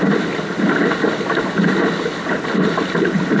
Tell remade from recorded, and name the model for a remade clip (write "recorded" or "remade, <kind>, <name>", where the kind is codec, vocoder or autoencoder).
recorded